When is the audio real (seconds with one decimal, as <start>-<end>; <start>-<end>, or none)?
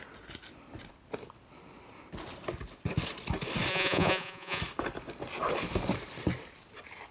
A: 0.0-3.7; 4.6-7.1